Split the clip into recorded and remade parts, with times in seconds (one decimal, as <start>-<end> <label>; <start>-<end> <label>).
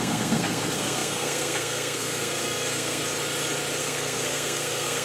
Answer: 0.0-3.0 remade; 3.0-3.8 recorded; 3.8-5.0 remade